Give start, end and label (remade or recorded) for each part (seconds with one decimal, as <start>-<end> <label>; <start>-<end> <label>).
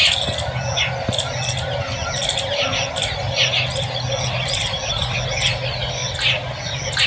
0.0-7.1 recorded